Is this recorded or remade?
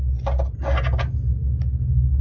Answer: recorded